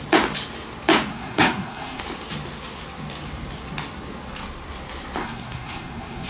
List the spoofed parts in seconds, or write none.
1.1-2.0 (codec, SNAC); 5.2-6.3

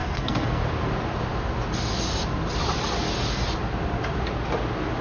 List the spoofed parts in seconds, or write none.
0.0-0.6 (codec, SNAC)

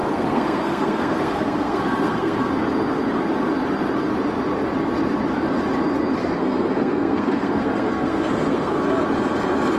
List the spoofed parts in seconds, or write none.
0.0-2.5 (codec, SNAC); 6.2-8.8